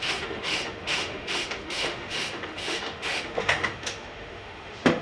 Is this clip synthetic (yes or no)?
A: yes